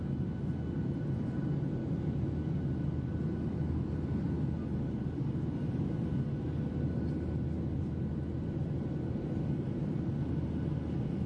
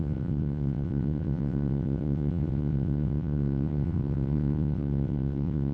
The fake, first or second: second